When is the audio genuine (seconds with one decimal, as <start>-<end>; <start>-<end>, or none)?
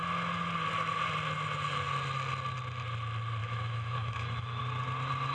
0.0-3.4; 4.6-5.3